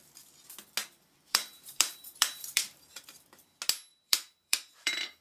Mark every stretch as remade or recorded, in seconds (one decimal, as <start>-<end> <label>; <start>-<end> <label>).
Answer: 0.0-0.8 recorded; 0.8-3.4 remade; 3.4-3.9 recorded; 3.9-5.2 remade